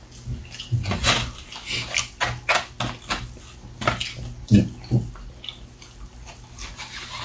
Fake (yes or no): no